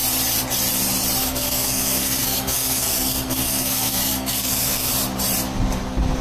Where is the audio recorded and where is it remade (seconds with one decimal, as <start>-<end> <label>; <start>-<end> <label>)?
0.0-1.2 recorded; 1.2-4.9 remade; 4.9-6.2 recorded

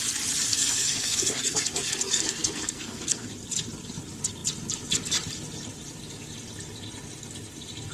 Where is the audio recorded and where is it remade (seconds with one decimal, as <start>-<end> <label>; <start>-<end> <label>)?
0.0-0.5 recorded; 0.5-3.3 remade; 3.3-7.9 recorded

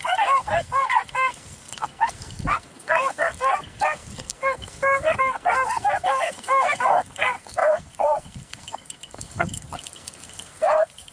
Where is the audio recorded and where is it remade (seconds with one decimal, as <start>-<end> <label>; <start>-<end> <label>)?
0.0-11.1 remade